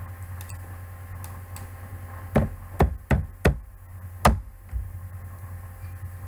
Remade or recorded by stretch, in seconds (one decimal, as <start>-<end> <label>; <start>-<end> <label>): 0.0-6.3 recorded